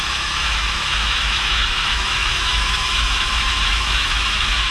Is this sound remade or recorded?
remade